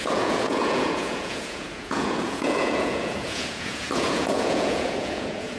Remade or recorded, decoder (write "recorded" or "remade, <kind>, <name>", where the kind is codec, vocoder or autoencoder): remade, vocoder, Vocos